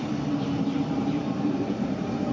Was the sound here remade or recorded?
remade